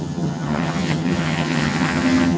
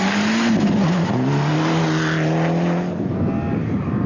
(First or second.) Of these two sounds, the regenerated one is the first